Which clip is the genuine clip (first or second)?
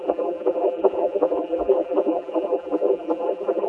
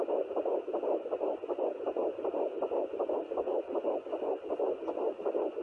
second